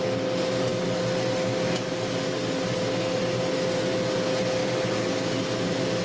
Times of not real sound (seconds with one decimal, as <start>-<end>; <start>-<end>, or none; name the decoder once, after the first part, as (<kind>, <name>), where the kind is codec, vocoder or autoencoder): none